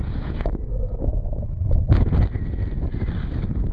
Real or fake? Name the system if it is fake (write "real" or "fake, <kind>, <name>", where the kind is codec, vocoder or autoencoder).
real